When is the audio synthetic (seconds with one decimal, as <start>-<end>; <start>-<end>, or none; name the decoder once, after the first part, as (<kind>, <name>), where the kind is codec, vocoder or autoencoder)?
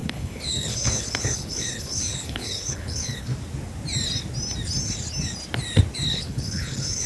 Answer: 0.0-3.3 (codec, HILCodec); 6.1-7.1